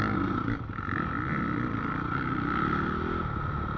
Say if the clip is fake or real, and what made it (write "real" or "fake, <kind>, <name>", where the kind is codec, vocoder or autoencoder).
real